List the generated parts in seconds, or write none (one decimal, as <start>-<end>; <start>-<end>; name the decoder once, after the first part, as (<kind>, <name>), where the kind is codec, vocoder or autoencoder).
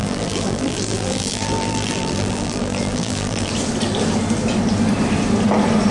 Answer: 0.0-3.5 (vocoder, BigVGAN v2)